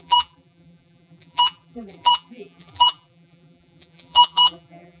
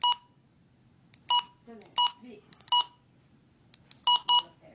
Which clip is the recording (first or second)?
second